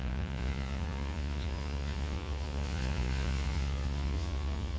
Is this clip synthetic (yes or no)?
yes